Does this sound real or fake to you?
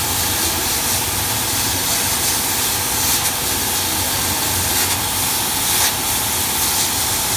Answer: real